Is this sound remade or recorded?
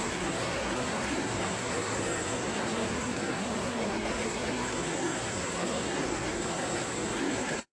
remade